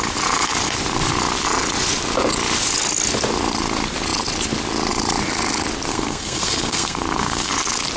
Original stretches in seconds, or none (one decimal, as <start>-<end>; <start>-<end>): 0.0-5.9; 7.5-8.0